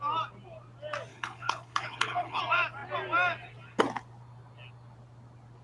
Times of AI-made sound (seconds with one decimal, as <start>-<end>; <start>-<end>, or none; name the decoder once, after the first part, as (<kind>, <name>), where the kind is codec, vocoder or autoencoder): 1.1-2.4 (codec, HILCodec)